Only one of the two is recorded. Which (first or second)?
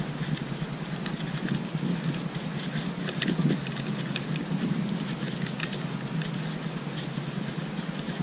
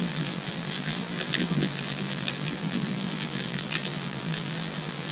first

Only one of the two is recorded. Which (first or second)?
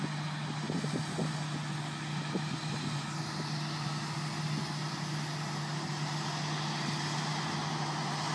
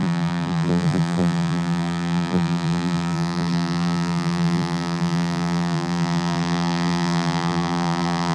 first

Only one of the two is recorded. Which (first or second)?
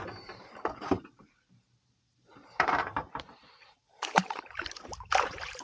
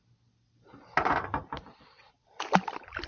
second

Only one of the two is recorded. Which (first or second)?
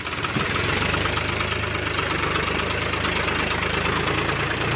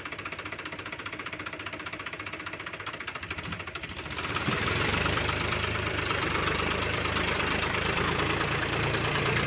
first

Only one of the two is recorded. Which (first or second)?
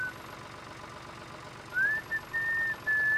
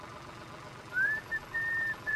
first